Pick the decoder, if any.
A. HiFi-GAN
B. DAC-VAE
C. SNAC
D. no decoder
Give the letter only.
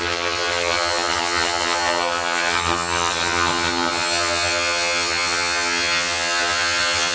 A